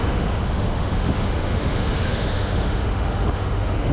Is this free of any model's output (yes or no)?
no